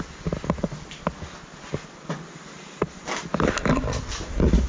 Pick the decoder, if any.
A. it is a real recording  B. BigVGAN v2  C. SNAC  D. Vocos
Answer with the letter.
A